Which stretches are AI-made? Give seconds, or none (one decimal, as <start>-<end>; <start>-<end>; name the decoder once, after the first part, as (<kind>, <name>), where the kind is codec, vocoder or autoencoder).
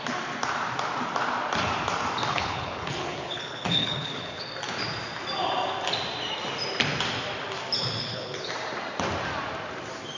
2.3-4.5 (codec, HILCodec); 8.0-8.5